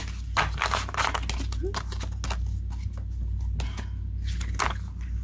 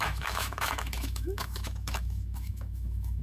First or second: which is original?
first